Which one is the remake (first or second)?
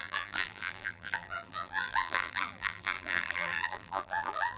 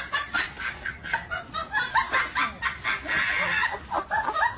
first